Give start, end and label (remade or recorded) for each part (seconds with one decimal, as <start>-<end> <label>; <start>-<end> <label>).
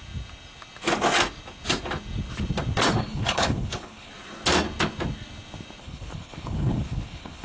0.0-2.9 recorded; 2.9-4.1 remade; 4.1-5.8 recorded; 5.8-7.4 remade